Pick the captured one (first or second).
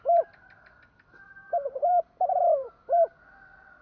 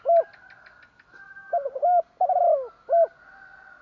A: second